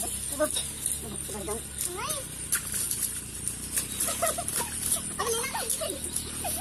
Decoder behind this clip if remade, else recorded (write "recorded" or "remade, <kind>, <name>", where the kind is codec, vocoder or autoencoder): recorded